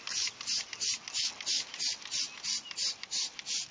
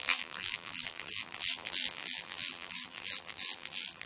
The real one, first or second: first